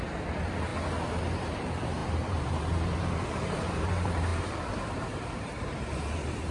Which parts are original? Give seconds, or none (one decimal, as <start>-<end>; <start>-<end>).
0.7-1.2